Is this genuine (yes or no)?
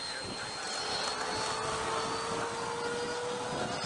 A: yes